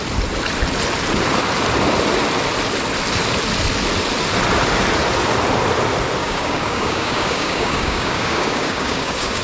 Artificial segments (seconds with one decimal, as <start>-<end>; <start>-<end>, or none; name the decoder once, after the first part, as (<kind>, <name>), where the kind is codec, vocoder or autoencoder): 6.2-9.4 (codec, DAC)